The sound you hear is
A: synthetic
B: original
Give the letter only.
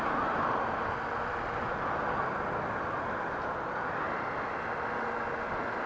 B